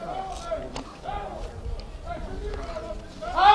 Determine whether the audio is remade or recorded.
recorded